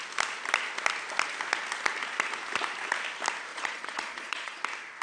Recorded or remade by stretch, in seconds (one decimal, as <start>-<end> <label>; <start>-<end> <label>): 0.0-3.5 recorded; 3.5-4.6 remade; 4.6-5.0 recorded